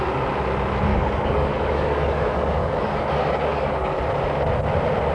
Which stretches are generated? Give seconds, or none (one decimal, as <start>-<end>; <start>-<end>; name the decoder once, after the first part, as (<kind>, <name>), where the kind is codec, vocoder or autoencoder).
0.9-4.0 (codec, DAC)